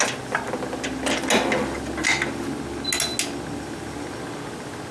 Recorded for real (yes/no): yes